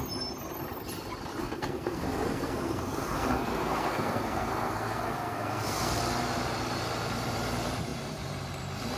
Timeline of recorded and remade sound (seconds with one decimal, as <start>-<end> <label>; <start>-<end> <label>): 0.0-1.4 recorded; 1.4-6.0 remade; 6.0-9.0 recorded